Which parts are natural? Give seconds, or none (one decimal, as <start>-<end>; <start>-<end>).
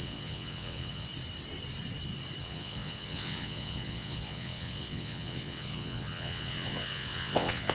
1.1-2.4